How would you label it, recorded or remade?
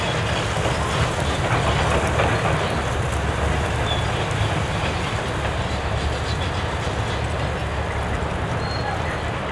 recorded